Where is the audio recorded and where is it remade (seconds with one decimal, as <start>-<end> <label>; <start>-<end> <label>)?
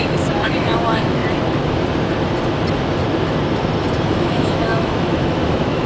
0.0-1.2 remade; 1.2-4.0 recorded; 4.0-5.9 remade